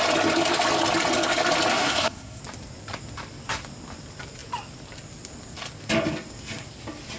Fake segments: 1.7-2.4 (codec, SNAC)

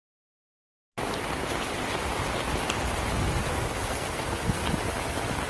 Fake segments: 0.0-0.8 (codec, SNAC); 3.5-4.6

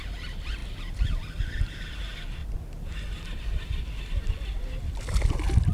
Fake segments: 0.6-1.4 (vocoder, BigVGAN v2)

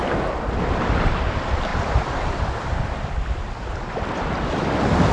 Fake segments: 0.0-0.8 (vocoder, BigVGAN v2); 1.7-5.1

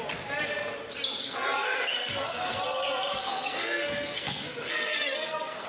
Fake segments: 1.2-2.6 (codec, SNAC); 3.1-5.7

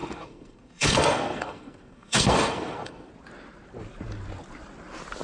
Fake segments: 0.0-3.1 (codec, SNAC)

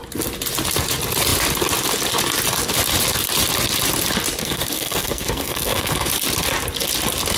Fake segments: 4.4-6.1 (codec, SNAC)